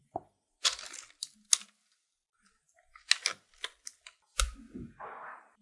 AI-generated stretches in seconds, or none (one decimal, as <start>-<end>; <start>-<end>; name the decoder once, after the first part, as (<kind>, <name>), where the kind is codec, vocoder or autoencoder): none